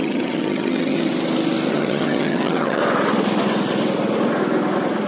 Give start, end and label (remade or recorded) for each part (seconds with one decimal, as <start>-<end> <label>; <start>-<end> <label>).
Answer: 0.0-1.1 remade; 1.1-1.7 recorded; 1.7-2.8 remade; 2.8-5.1 recorded